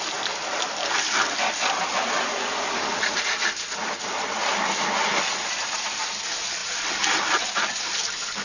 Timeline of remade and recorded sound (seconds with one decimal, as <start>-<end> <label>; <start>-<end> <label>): 0.0-8.4 recorded